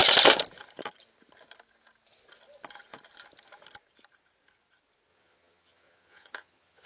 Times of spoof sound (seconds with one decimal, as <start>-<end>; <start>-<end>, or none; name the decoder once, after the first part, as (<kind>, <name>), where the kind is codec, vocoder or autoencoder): 5.1-6.9 (vocoder, Vocos)